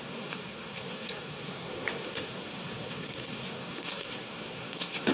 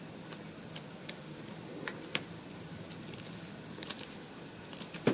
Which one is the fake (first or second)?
first